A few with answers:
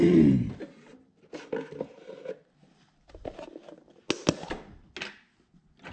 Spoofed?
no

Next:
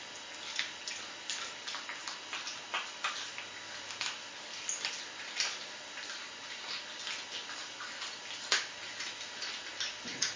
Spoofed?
no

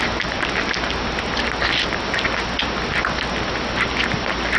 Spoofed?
no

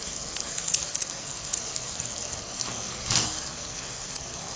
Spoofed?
yes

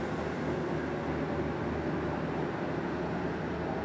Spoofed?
no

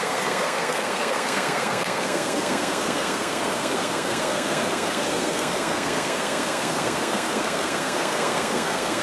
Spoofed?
yes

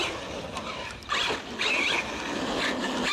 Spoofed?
no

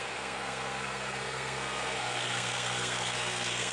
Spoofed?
yes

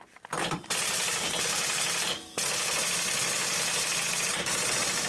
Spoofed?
no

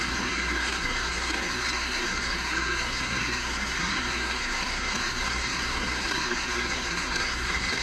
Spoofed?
yes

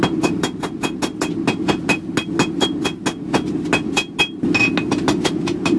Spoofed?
no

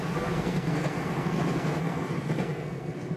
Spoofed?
yes